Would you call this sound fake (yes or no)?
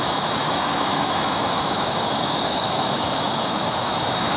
yes